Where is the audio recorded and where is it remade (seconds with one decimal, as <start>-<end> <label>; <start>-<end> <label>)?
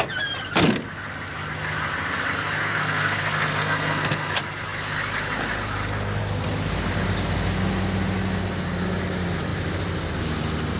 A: 0.0-2.6 recorded; 2.6-4.3 remade; 4.3-10.8 recorded